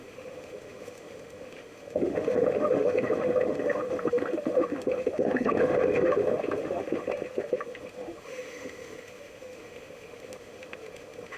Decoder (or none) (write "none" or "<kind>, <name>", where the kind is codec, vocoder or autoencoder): autoencoder, DAC-VAE